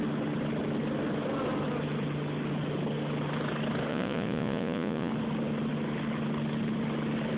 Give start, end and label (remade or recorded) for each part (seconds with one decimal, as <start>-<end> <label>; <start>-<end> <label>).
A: 0.0-3.9 recorded; 3.9-5.1 remade; 5.1-7.4 recorded